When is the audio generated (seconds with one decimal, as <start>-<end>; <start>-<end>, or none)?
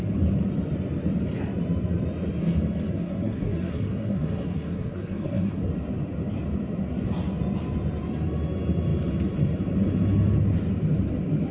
2.9-5.7